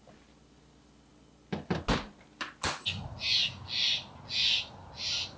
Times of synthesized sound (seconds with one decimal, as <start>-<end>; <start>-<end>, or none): none